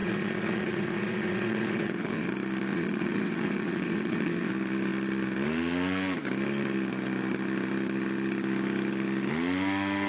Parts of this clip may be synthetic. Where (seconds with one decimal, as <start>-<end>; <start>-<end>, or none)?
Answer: 0.0-2.3; 2.7-4.5